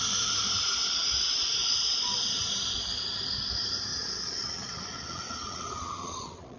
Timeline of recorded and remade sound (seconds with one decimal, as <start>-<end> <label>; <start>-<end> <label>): 0.0-3.9 recorded; 3.9-6.6 remade

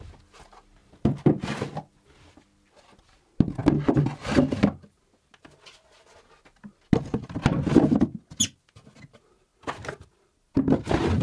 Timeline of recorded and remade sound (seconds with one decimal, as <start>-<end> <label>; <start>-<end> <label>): 0.0-11.2 recorded